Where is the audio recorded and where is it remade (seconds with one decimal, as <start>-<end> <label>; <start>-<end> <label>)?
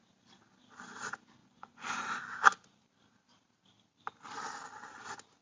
0.0-1.4 recorded; 1.4-2.2 remade; 2.2-5.4 recorded